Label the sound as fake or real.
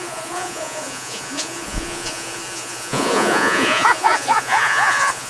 fake